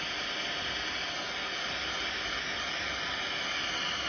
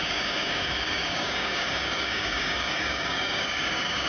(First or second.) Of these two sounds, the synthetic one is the second